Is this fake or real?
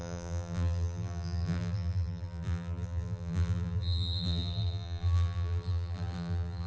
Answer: fake